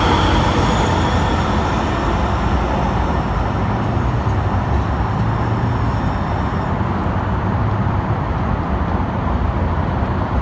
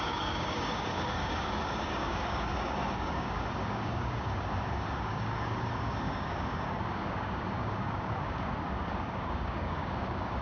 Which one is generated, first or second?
second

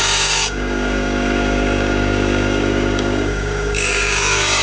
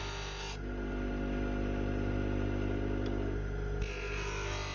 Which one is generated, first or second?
first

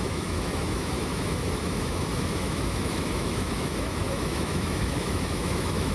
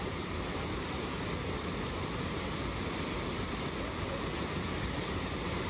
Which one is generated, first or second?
first